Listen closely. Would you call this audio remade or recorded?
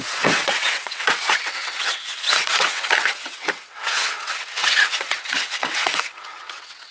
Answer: remade